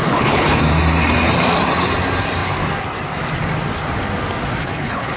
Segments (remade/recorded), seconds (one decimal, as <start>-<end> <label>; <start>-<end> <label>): 0.0-0.6 remade; 0.6-4.6 recorded; 4.6-5.2 remade